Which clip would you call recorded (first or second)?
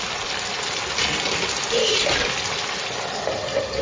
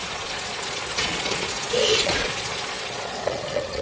first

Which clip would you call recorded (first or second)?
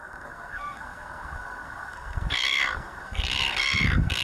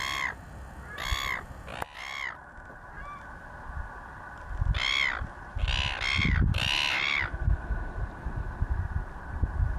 second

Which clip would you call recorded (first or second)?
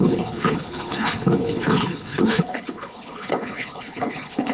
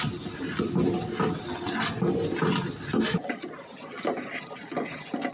second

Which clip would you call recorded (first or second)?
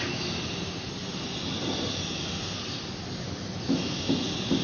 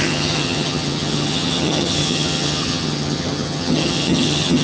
first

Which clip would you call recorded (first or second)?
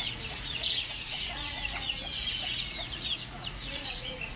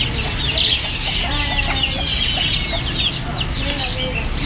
second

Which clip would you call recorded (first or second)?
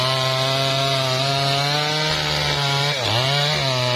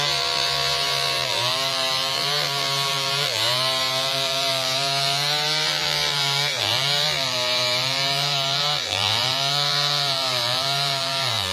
first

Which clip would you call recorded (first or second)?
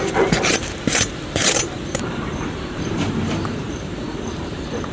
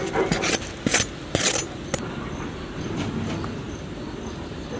second